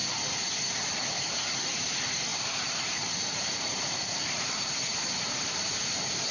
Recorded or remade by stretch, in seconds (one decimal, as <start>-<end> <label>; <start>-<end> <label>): 0.0-2.3 recorded; 2.3-5.7 remade; 5.7-6.3 recorded